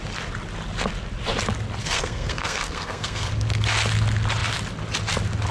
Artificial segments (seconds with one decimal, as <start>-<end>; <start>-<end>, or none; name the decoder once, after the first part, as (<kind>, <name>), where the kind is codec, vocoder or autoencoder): 1.8-3.3 (codec, SNAC)